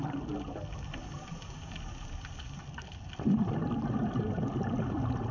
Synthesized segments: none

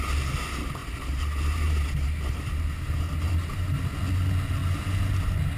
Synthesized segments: 0.8-3.7 (vocoder, BigVGAN v2)

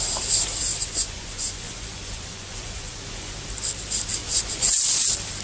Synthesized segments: 0.7-3.4 (vocoder, Vocos); 4.2-4.9

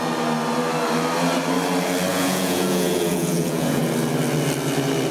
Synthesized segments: 2.1-3.8 (vocoder, Vocos)

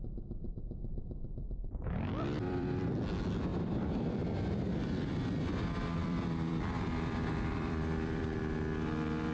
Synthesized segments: 2.1-2.9 (vocoder, BigVGAN v2); 3.5-5.1; 6.0-8.4

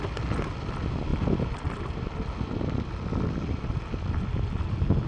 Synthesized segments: none

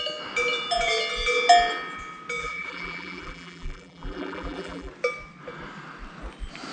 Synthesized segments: 2.4-4.9 (vocoder, BigVGAN v2)